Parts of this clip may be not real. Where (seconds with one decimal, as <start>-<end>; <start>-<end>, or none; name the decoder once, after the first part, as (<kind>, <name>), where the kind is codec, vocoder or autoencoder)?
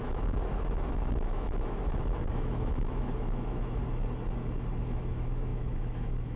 0.0-3.8 (autoencoder, DAC-VAE); 4.8-6.4